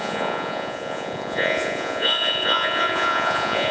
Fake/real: fake